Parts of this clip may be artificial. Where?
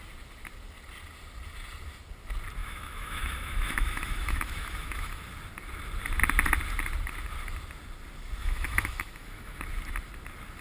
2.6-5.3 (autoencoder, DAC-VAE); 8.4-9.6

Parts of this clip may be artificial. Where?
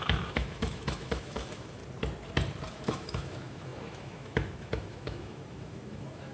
0.0-1.8 (autoencoder, DAC-VAE); 2.7-6.3